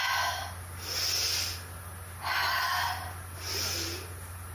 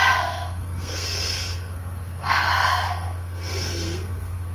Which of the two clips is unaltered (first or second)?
first